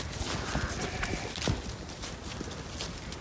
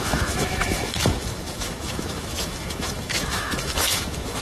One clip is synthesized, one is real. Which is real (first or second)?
first